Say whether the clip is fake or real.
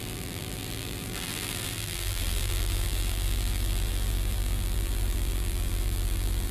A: fake